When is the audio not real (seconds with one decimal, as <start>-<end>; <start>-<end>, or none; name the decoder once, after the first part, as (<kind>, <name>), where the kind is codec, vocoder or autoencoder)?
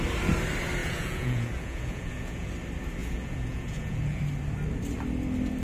0.8-2.5 (vocoder, Vocos); 3.0-4.2